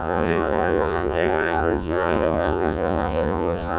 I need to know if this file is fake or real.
fake